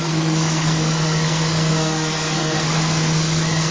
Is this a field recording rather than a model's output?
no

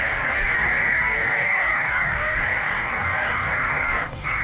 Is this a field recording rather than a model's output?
no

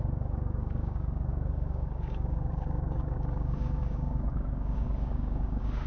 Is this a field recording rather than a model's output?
no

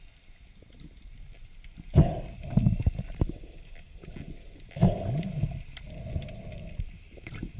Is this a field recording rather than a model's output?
yes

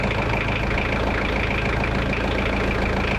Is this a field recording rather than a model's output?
yes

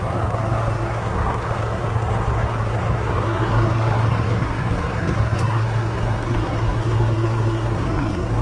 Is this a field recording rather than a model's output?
no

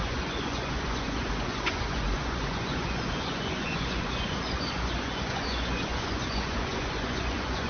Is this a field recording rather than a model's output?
no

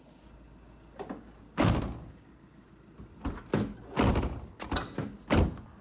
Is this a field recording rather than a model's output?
yes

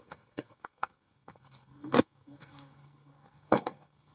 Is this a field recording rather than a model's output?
no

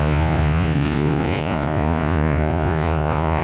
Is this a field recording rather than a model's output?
no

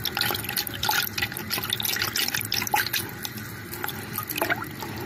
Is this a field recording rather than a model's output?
yes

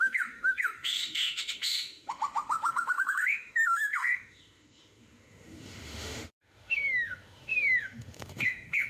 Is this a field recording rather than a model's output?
no